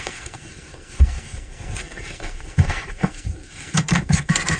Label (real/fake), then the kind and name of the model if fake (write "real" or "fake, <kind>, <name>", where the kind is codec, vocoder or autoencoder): fake, codec, SNAC